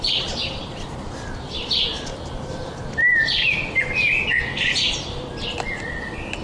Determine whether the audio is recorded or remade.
recorded